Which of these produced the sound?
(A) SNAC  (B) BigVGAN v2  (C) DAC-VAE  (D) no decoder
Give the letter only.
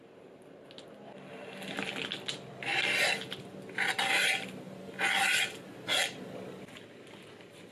D